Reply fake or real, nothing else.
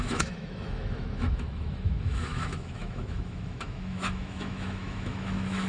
fake